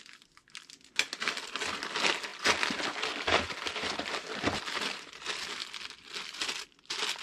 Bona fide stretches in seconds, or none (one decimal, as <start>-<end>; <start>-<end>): 0.0-7.2